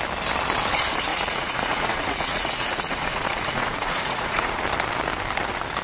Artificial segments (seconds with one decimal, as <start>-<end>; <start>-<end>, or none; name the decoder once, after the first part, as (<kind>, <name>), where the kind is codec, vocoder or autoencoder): 1.1-4.6 (vocoder, Vocos)